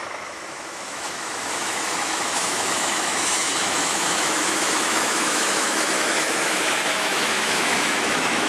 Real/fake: fake